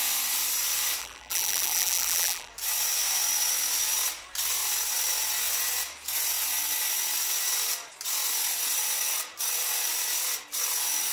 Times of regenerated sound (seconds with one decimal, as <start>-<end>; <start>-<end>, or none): 1.0-2.5